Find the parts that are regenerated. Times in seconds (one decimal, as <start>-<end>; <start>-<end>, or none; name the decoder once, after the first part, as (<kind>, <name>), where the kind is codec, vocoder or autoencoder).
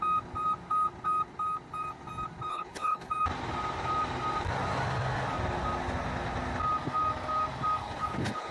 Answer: 2.5-3.1 (codec, HILCodec); 7.8-8.5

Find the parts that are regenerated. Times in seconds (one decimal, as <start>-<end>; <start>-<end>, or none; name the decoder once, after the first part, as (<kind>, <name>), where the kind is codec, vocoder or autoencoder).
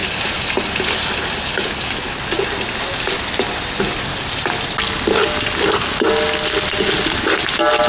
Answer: none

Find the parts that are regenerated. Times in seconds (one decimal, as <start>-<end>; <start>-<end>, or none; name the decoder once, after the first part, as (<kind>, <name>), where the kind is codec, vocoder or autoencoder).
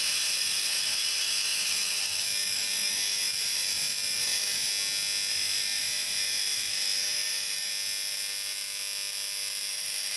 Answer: 0.0-4.7 (autoencoder, DAC-VAE); 5.3-7.7; 9.7-10.2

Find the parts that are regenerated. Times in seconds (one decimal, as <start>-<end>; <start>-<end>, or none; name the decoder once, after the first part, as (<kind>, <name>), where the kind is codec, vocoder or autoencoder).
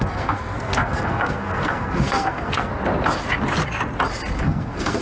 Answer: 0.0-2.7 (codec, SNAC); 4.4-5.0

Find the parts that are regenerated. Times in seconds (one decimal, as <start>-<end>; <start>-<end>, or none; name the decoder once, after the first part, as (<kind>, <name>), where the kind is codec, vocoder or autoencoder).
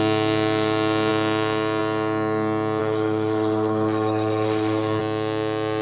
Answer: 2.8-5.0 (codec, SNAC)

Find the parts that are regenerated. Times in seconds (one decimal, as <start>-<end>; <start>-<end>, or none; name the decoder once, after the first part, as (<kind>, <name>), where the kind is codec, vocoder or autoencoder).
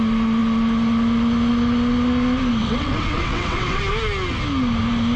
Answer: 2.6-3.8 (vocoder, WaveNeXt)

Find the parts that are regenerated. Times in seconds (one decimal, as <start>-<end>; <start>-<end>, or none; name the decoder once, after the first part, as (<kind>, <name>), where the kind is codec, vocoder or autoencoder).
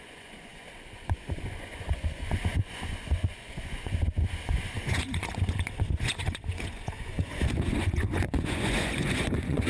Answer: 0.0-9.7 (vocoder, Vocos)